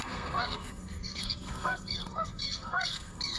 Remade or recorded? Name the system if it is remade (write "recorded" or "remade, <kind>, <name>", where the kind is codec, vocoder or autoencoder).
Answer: remade, codec, SNAC